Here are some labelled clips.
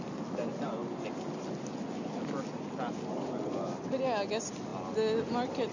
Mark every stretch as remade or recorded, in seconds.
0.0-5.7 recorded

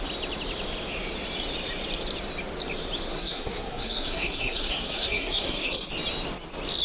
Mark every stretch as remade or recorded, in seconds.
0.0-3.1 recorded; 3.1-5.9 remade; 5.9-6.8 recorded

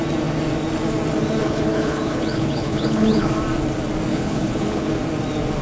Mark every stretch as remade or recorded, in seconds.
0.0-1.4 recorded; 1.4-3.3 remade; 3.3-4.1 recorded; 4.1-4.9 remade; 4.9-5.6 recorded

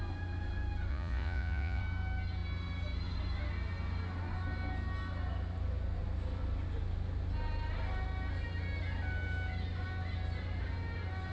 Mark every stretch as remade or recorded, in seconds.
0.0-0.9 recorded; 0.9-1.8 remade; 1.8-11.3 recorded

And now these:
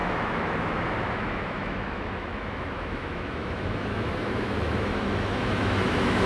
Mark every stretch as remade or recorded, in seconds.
0.0-6.3 remade

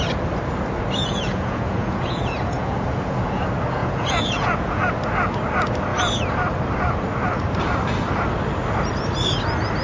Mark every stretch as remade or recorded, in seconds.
0.0-1.0 recorded; 1.0-3.4 remade; 3.4-3.8 recorded; 3.8-4.9 remade; 4.9-9.8 recorded

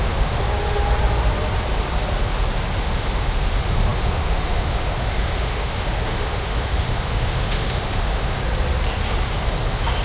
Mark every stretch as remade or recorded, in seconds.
0.0-0.4 remade; 0.4-2.8 recorded; 2.8-8.4 remade; 8.4-10.0 recorded

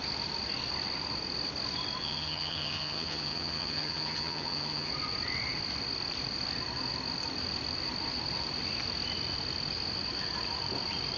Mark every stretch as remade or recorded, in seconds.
0.0-2.0 recorded; 2.0-4.9 remade; 4.9-11.2 recorded